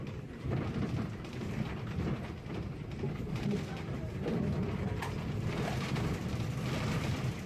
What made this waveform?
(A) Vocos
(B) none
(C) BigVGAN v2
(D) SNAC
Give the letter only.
C